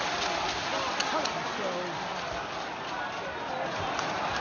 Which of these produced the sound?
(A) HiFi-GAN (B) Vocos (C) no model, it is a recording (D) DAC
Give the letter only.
C